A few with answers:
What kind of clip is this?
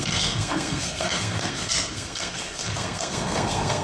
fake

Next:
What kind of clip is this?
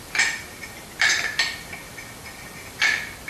real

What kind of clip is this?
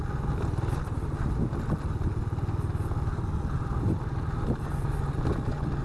real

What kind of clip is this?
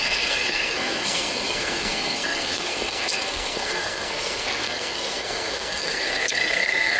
fake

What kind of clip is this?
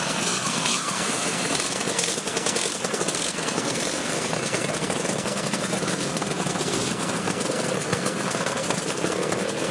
fake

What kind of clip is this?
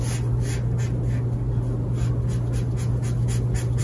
real